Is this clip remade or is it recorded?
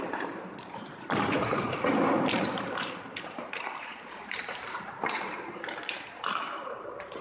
remade